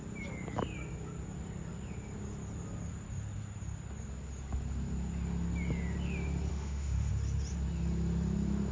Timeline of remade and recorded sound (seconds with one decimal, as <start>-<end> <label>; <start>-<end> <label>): 0.0-6.5 recorded; 6.5-7.1 remade; 7.1-8.7 recorded